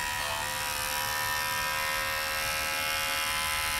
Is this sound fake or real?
real